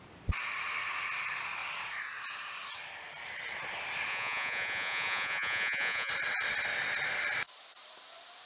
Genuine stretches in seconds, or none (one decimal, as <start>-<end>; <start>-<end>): 0.0-4.1; 6.1-8.5